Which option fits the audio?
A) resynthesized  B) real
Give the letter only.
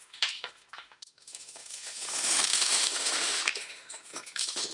A